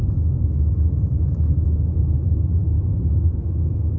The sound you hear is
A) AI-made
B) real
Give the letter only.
A